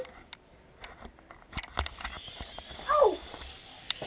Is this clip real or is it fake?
real